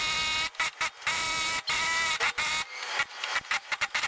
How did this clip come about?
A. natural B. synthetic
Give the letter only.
A